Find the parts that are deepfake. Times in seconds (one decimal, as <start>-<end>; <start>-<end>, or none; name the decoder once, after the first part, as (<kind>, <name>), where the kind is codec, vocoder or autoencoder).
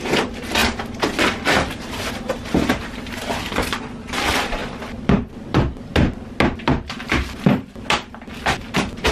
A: 0.6-3.8 (vocoder, BigVGAN v2); 4.6-5.3